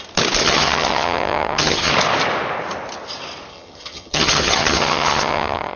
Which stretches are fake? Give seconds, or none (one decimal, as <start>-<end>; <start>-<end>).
0.4-1.9; 3.5-5.8